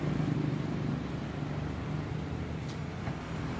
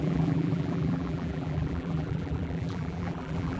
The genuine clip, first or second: first